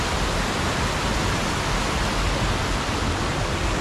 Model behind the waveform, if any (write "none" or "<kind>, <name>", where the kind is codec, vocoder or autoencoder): none